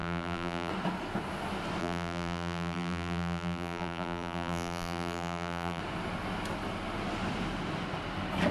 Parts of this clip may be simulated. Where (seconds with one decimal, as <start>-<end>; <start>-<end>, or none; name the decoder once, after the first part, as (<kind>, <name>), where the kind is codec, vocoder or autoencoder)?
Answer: 0.0-0.7 (vocoder, BigVGAN v2); 1.8-5.8